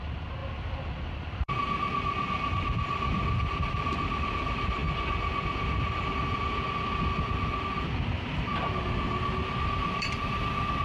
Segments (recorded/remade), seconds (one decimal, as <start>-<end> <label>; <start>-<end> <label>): 0.0-4.8 remade; 4.8-9.6 recorded; 9.6-10.8 remade